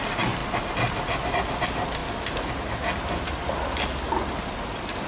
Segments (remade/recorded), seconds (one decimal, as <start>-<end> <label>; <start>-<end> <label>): 0.0-5.1 recorded